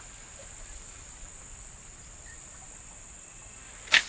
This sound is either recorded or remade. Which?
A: recorded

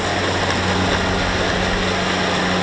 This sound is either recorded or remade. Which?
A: recorded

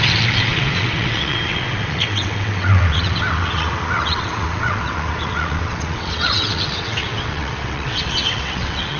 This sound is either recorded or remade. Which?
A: remade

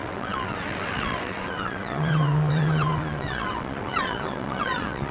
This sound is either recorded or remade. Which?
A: remade